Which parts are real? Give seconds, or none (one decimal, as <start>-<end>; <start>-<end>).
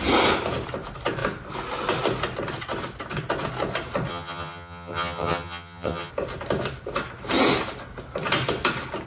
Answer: 0.0-4.1; 6.1-9.1